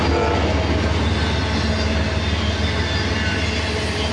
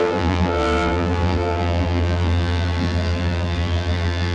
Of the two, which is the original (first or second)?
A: first